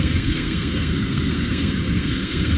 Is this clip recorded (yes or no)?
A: no